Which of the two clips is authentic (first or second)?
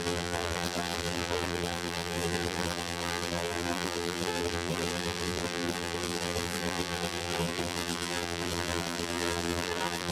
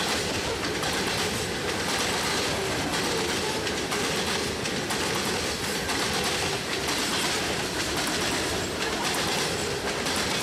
second